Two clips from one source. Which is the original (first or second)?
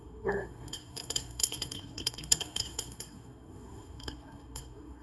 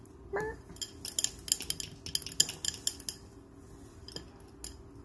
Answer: second